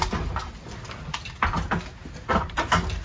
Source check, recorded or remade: recorded